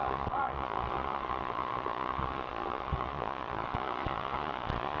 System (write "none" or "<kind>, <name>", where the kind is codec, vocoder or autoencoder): vocoder, Vocos